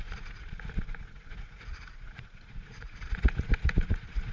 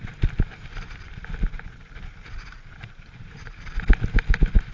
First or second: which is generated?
first